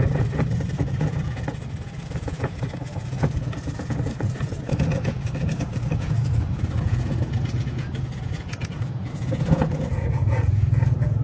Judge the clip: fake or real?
fake